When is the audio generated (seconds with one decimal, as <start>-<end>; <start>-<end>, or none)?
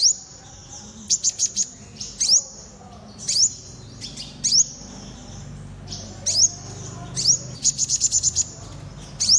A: none